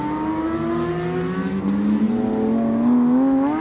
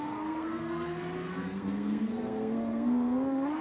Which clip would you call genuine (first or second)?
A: first